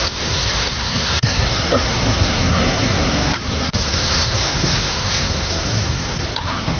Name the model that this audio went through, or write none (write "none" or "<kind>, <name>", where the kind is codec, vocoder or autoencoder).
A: codec, SNAC